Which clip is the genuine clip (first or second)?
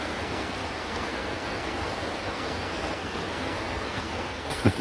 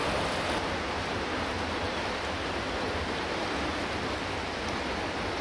second